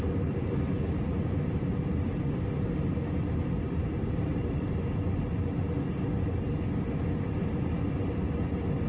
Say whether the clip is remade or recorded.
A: recorded